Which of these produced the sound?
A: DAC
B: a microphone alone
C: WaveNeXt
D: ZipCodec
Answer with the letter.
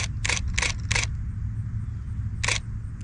B